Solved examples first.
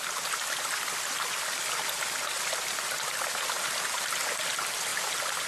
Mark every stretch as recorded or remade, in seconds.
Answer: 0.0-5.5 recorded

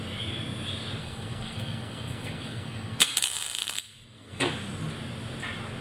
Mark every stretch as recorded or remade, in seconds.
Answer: 0.0-1.0 recorded; 1.0-4.5 remade; 4.5-5.8 recorded

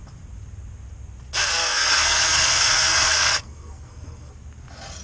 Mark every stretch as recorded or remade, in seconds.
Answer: 0.0-1.6 recorded; 1.6-4.3 remade; 4.3-5.0 recorded

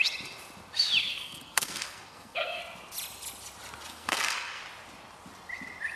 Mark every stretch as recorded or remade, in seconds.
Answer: 0.0-1.0 recorded; 1.0-2.6 remade; 2.6-3.9 recorded; 3.9-4.6 remade; 4.6-6.0 recorded

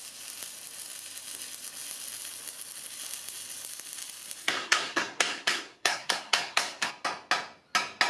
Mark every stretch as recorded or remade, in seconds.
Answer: 0.0-4.4 recorded; 4.4-6.9 remade; 6.9-8.1 recorded

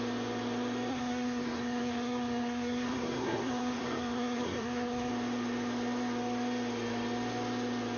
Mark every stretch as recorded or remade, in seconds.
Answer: 0.0-0.9 recorded; 0.9-5.1 remade; 5.1-8.0 recorded

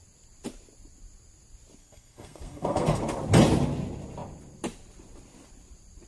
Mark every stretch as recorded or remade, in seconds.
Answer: 0.0-1.8 recorded; 1.8-3.0 remade; 3.0-6.1 recorded